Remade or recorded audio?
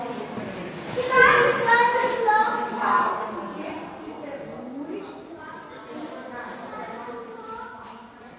recorded